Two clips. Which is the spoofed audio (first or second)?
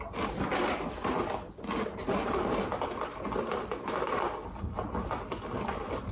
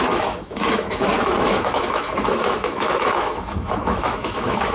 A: second